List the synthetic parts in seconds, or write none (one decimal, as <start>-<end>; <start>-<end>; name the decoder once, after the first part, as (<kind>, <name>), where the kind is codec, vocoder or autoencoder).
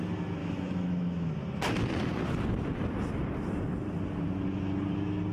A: 0.4-1.3 (autoencoder, DAC-VAE)